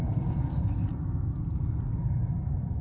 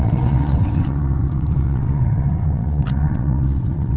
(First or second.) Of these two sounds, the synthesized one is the second